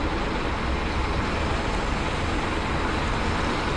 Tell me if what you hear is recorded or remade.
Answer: recorded